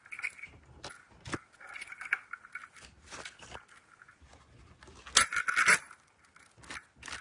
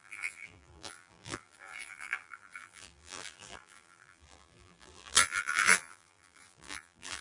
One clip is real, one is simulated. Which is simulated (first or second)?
second